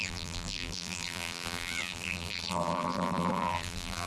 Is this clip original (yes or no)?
no